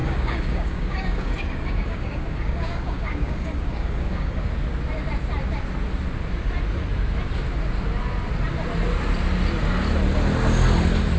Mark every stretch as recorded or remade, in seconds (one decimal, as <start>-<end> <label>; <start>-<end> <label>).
0.0-4.5 remade; 4.5-11.2 recorded